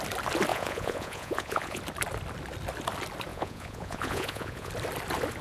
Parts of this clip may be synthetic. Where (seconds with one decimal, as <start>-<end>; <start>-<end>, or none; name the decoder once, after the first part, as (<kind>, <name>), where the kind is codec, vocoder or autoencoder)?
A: 0.5-1.8 (vocoder, Vocos); 3.3-4.7